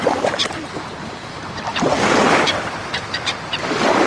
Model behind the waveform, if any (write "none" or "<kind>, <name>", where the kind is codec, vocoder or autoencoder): none